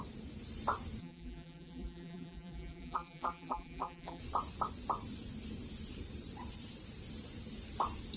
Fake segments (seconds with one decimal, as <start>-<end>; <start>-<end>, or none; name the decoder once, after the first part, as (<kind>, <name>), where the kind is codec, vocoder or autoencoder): 1.0-4.2 (vocoder, BigVGAN v2)